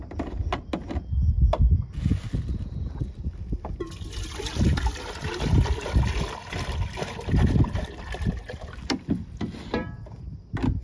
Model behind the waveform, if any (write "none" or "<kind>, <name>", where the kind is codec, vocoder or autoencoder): none